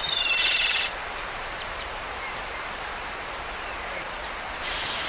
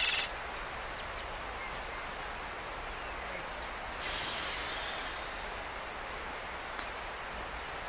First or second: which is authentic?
second